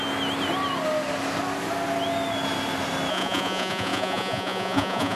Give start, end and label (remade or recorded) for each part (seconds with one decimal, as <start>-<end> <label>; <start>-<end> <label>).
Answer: 0.0-3.1 recorded; 3.1-5.2 remade